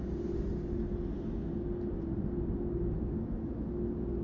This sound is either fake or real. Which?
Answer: real